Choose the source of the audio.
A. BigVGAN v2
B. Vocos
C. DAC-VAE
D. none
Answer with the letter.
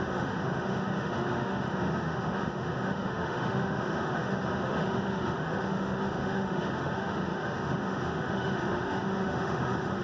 C